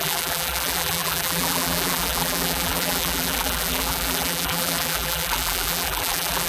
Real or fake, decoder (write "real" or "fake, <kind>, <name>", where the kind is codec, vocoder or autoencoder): fake, vocoder, BigVGAN v2